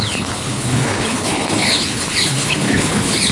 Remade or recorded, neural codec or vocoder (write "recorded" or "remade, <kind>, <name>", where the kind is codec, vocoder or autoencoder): remade, codec, HILCodec